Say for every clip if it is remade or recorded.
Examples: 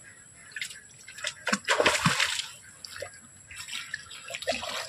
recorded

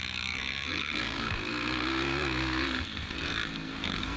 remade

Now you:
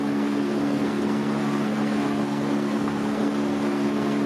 remade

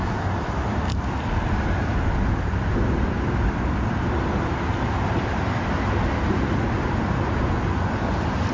recorded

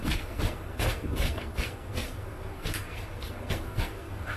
remade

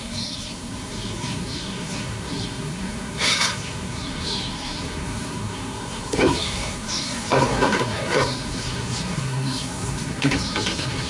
remade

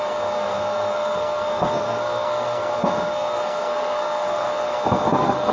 remade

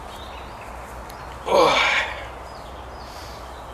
recorded